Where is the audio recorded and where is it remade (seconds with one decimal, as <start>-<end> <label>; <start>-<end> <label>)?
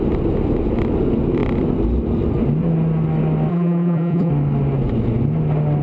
0.0-3.5 recorded; 3.5-4.3 remade; 4.3-5.8 recorded